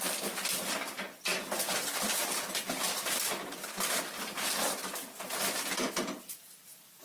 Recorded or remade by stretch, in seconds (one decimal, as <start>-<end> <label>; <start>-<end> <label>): 0.0-7.0 recorded